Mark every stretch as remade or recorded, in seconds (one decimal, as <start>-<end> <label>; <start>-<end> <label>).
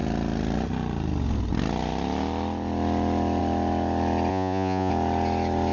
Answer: 0.0-4.3 recorded; 4.3-4.9 remade; 4.9-5.7 recorded